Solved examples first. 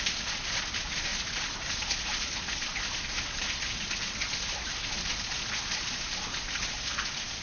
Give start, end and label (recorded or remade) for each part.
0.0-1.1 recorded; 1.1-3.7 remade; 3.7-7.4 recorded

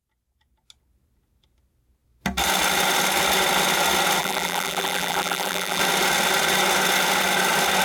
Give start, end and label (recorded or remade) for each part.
0.0-4.2 recorded; 4.2-5.8 remade; 5.8-7.8 recorded

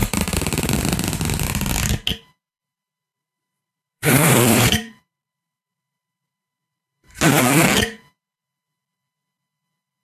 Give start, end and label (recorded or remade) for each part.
0.0-0.8 remade; 0.8-3.1 recorded; 3.1-7.4 remade; 7.4-10.0 recorded

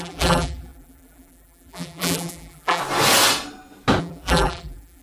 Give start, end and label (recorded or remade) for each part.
0.0-2.8 remade; 2.8-4.0 recorded; 4.0-5.0 remade

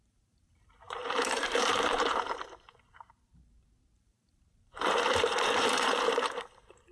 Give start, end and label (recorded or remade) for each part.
0.0-6.9 remade

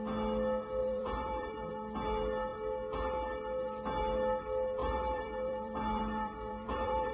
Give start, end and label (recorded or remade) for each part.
0.0-0.8 recorded; 0.8-1.7 remade; 1.7-4.8 recorded; 4.8-7.1 remade

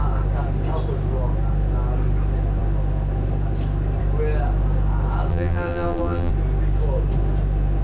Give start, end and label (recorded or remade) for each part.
0.0-5.3 recorded; 5.3-6.3 remade; 6.3-7.8 recorded